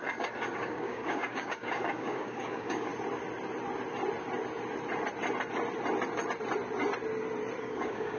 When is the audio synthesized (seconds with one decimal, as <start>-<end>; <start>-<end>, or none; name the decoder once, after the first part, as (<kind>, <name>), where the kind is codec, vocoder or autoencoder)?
0.0-2.9 (codec, DAC); 7.6-8.2